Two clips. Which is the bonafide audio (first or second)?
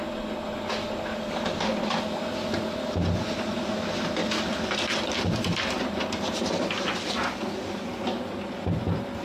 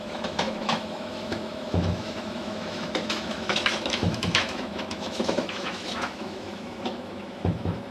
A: first